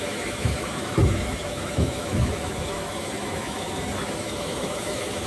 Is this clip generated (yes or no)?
yes